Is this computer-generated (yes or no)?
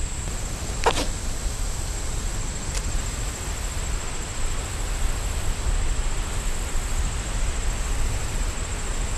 no